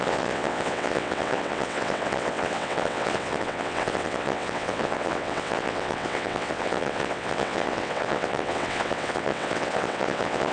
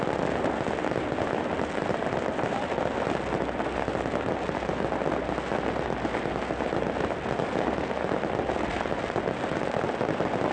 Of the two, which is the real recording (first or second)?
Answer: second